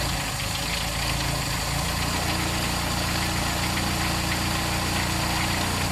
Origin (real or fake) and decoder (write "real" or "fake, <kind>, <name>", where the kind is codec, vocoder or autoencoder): real